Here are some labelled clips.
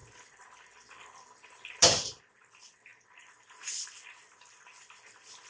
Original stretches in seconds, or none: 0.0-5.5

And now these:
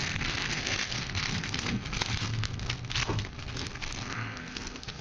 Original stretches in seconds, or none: none

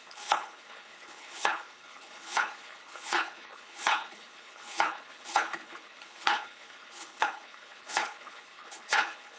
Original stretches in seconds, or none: none